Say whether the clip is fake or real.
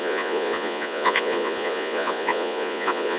fake